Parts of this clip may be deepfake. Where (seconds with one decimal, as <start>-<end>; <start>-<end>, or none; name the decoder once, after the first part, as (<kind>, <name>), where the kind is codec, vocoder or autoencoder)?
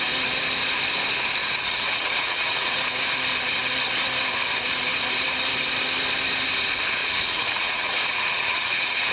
1.4-2.8 (vocoder, Vocos); 7.0-9.1